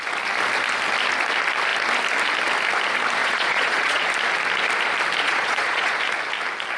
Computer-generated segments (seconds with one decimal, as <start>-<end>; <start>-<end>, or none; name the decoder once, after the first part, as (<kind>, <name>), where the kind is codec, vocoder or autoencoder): 3.2-4.1 (vocoder, Vocos); 5.2-6.0